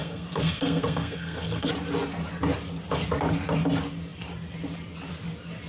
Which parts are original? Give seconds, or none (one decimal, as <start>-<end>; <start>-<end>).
1.7-5.7